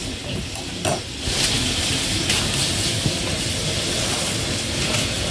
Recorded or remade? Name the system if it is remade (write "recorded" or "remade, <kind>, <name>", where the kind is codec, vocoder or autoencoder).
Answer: recorded